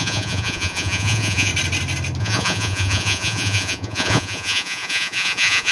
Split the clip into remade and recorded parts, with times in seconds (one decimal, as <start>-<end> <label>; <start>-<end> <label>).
0.0-1.5 remade; 1.5-2.2 recorded; 2.2-5.7 remade